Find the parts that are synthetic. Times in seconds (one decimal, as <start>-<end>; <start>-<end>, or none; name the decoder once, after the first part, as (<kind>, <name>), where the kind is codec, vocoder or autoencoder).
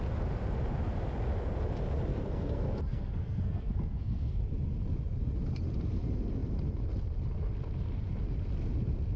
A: 2.1-4.4 (codec, SNAC)